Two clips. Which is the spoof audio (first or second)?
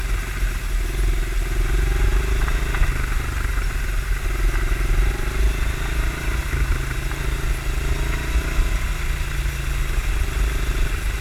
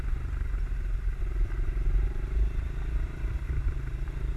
second